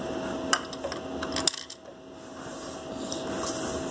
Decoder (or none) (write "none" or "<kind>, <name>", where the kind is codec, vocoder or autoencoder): none